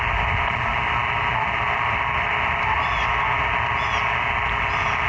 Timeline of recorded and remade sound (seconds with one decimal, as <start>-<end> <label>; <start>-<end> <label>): 0.0-5.1 recorded